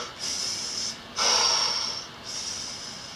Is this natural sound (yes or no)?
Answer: yes